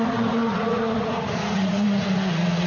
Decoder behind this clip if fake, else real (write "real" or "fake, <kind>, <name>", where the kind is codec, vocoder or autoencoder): fake, vocoder, Vocos